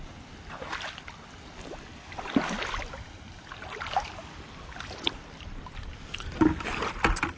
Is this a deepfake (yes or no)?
no